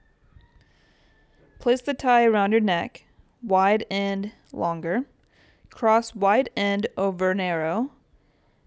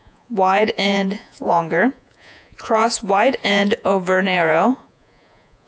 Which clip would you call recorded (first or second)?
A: first